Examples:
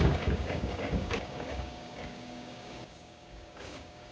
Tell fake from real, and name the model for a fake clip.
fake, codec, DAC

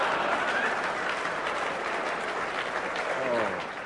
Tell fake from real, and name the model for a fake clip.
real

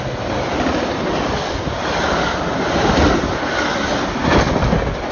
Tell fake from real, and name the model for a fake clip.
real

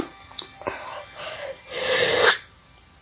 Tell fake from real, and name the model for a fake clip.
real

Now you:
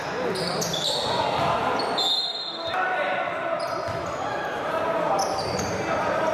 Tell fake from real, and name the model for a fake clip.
real